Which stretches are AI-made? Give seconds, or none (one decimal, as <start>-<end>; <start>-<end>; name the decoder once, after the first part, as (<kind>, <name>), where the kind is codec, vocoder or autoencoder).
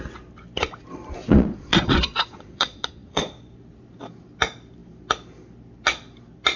1.2-3.3 (vocoder, Vocos)